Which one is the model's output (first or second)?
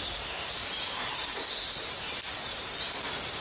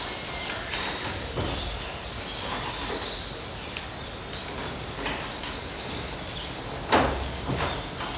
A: first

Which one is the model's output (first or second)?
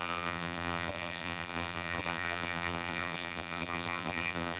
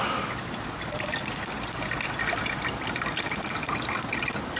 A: first